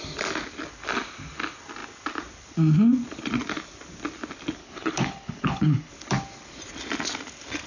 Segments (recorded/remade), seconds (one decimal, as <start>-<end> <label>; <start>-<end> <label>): 0.0-4.6 recorded; 4.6-5.9 remade; 5.9-7.7 recorded